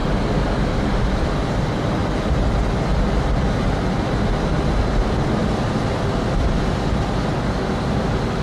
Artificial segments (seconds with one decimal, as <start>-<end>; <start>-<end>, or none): 5.4-7.3